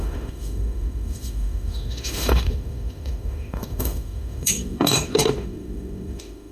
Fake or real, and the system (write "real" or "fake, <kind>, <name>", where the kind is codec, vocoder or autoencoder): fake, autoencoder, DAC-VAE